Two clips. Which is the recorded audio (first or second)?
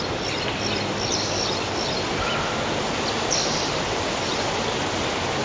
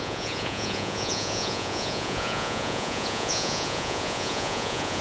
first